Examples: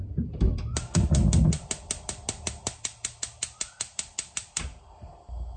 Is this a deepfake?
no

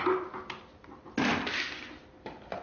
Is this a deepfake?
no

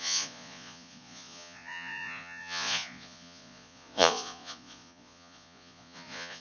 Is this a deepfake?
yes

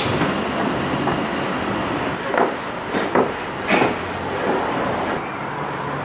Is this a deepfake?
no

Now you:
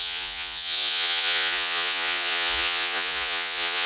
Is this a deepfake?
yes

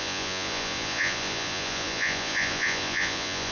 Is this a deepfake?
yes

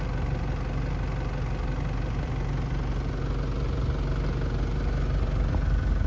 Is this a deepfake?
no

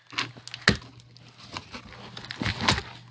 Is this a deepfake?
no